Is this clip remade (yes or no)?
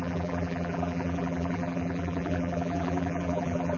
yes